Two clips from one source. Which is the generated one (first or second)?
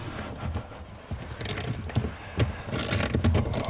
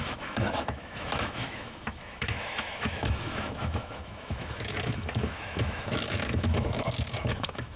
second